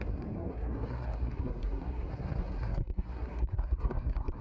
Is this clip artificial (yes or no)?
yes